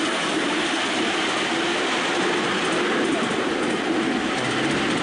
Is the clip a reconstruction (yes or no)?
no